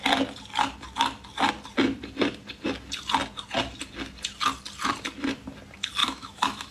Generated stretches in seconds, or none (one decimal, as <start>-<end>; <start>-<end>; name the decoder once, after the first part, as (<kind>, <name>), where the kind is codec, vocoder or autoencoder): 6.0-6.7 (autoencoder, DAC-VAE)